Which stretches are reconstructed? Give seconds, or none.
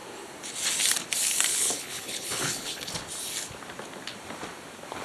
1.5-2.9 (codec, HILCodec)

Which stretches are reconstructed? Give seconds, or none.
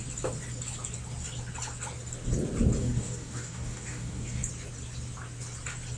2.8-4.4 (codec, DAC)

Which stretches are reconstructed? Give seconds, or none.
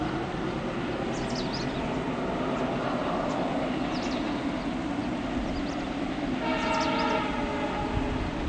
none